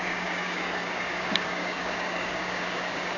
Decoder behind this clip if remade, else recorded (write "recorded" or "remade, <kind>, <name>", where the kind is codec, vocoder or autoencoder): remade, codec, DAC